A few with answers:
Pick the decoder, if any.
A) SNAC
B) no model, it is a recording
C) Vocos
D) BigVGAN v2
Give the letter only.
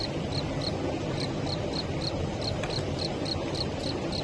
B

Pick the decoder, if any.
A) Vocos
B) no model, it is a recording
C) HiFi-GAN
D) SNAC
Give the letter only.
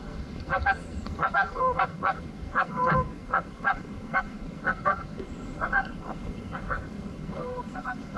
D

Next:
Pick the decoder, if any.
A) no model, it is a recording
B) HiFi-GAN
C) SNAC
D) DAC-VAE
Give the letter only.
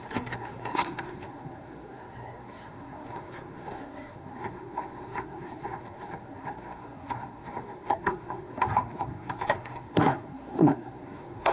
C